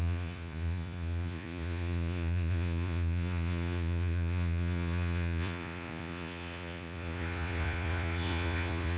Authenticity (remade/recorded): remade